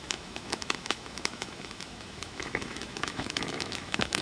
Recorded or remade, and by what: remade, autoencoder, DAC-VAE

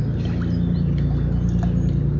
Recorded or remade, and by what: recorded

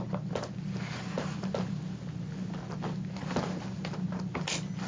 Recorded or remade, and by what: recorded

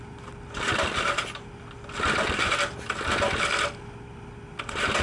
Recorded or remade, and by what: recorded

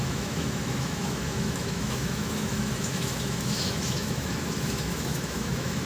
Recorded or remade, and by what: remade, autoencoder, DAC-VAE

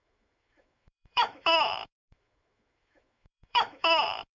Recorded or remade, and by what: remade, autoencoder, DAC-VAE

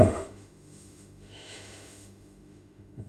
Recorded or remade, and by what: remade, autoencoder, DAC-VAE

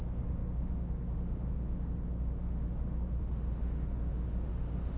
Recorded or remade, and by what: remade, autoencoder, DAC-VAE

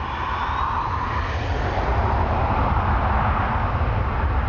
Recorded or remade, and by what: recorded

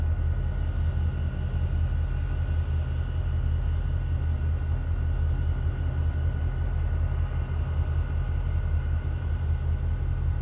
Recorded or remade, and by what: recorded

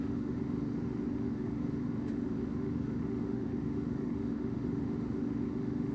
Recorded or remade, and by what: remade, autoencoder, DAC-VAE